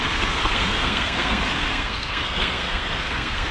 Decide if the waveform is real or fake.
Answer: fake